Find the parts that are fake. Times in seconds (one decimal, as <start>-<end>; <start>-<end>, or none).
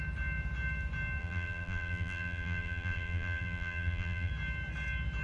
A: 1.2-4.3